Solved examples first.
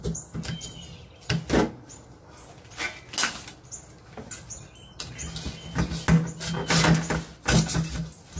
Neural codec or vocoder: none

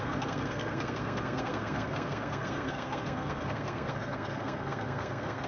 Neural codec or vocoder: codec, SNAC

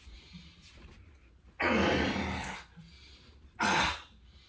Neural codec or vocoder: none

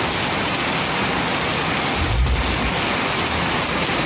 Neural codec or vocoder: none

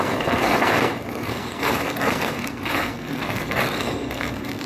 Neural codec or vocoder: codec, SNAC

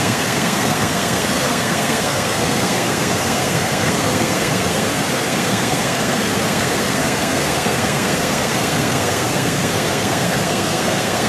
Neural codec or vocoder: codec, SNAC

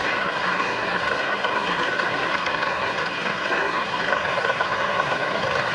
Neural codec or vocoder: codec, SNAC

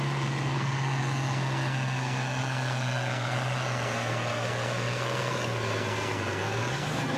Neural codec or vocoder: codec, SNAC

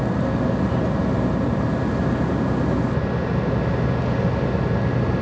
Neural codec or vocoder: none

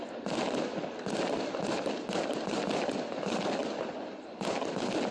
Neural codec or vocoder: none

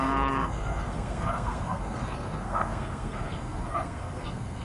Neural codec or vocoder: codec, SNAC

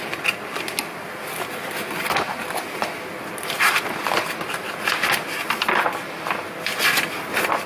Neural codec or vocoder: none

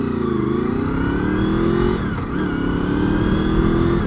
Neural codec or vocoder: none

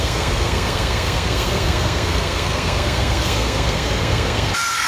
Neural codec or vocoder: codec, SNAC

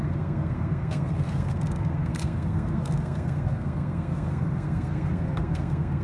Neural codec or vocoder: codec, SNAC